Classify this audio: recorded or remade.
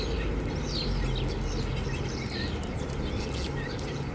recorded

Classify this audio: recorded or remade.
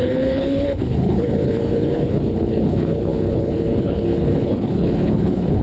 remade